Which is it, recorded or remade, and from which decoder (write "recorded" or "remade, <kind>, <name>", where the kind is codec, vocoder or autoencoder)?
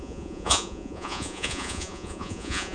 remade, vocoder, Vocos